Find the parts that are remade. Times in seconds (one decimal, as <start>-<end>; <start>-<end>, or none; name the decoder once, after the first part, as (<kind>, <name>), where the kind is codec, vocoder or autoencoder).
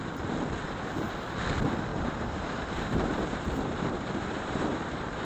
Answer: 1.9-4.8 (vocoder, BigVGAN v2)